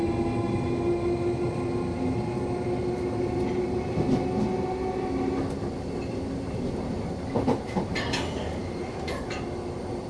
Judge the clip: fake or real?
real